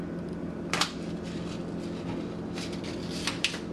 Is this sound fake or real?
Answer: real